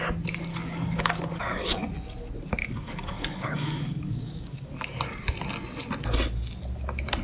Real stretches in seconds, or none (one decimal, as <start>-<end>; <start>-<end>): 0.0-0.5; 1.6-2.6; 4.7-7.2